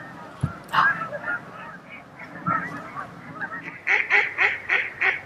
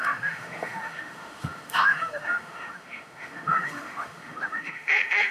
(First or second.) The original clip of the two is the first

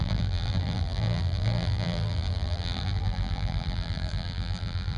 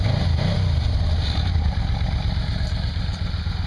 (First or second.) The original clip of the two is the second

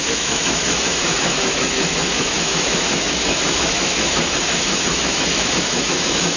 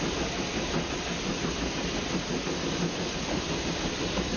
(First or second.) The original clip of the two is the second